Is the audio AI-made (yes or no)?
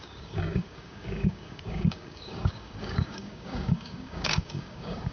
yes